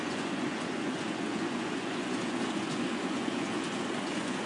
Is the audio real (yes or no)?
no